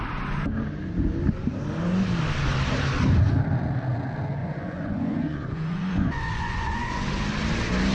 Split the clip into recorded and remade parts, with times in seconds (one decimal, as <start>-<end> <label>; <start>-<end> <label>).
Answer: 0.0-4.4 recorded; 4.4-7.0 remade; 7.0-7.9 recorded